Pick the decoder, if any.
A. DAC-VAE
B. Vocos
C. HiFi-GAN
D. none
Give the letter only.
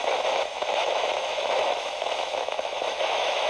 A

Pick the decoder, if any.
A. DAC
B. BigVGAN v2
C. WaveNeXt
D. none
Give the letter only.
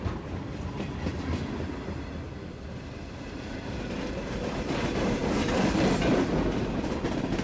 D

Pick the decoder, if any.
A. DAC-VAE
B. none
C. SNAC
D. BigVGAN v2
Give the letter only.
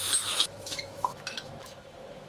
A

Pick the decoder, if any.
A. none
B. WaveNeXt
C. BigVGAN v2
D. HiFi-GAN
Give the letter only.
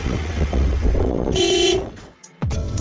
B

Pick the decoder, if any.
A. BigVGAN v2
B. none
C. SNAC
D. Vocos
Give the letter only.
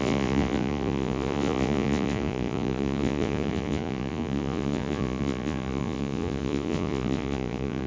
D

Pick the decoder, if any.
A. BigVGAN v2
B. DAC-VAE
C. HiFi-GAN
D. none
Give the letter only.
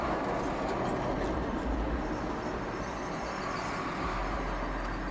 D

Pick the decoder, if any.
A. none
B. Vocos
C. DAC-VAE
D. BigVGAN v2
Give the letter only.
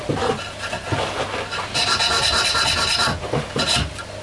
A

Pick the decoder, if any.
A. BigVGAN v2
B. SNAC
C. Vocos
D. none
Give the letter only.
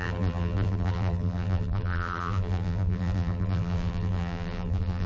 A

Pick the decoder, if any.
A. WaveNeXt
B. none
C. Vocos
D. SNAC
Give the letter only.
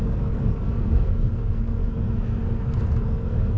D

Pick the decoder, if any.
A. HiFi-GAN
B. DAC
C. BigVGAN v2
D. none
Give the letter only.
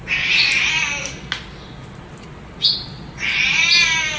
D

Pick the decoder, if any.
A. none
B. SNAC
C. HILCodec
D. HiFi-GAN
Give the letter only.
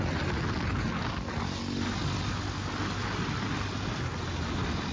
A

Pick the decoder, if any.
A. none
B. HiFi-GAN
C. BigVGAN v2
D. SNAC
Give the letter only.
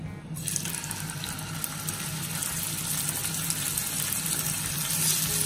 A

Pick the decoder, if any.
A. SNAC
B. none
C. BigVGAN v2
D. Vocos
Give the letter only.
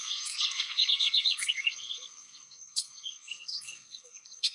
A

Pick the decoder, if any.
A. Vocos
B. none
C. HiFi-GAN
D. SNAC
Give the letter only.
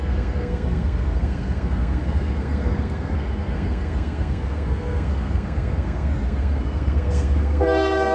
D